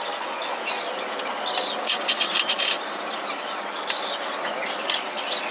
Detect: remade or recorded recorded